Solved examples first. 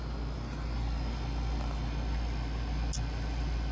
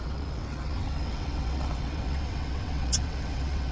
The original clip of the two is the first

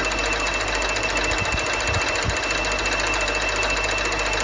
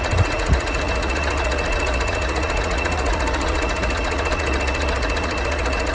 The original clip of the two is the first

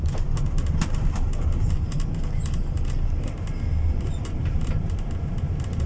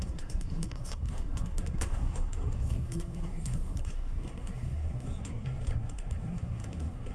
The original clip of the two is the first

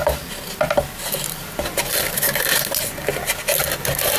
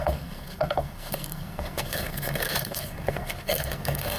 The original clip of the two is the first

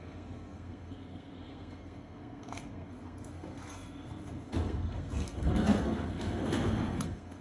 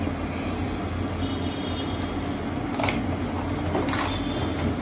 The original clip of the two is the second